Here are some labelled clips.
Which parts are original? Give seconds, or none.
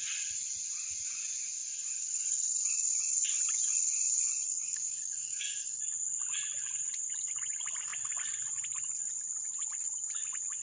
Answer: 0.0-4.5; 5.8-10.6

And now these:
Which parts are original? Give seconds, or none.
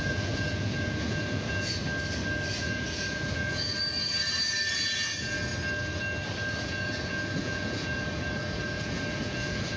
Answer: 1.8-2.5; 3.7-4.7; 5.5-6.6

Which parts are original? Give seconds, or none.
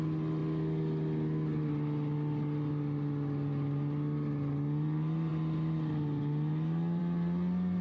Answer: 0.0-7.8